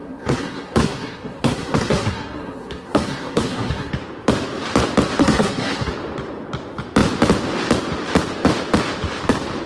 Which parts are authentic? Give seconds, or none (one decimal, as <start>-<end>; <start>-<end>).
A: 3.9-5.2; 5.9-9.7